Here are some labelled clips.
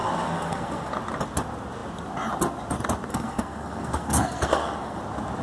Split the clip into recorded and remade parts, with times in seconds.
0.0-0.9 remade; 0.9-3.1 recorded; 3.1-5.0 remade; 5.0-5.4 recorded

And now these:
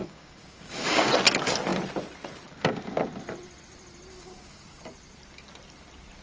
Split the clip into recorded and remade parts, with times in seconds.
0.0-1.1 remade; 1.1-4.1 recorded; 4.1-4.8 remade; 4.8-6.2 recorded

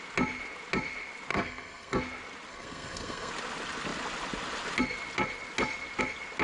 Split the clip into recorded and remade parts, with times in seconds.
0.0-1.3 recorded; 1.3-2.0 remade; 2.0-2.5 recorded; 2.5-3.3 remade; 3.3-6.4 recorded

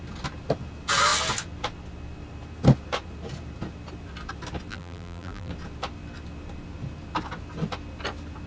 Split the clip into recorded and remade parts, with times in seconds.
0.0-4.7 recorded; 4.7-5.5 remade; 5.5-8.5 recorded

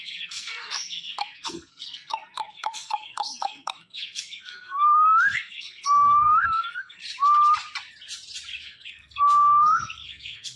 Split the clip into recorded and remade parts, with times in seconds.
0.0-7.0 remade; 7.0-8.6 recorded; 8.6-10.6 remade